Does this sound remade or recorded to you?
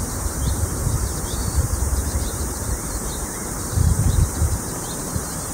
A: remade